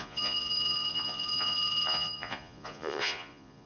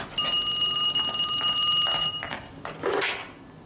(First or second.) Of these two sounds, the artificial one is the first